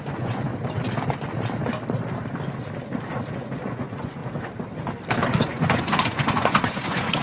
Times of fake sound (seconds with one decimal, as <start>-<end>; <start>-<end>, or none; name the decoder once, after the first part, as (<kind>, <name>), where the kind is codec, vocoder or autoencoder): 0.0-0.5 (vocoder, Vocos); 3.3-4.2; 5.4-7.2